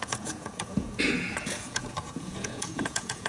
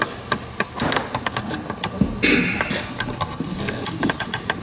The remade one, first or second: first